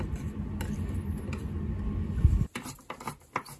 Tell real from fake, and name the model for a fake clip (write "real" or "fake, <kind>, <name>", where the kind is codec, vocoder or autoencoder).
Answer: real